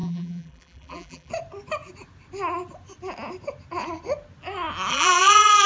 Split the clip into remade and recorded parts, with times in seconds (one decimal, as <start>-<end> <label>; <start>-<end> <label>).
0.0-1.3 remade; 1.3-4.9 recorded; 4.9-5.7 remade